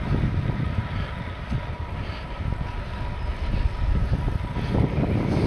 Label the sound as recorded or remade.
recorded